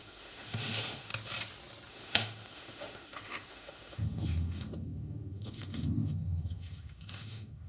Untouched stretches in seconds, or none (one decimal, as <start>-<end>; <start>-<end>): 1.1-1.9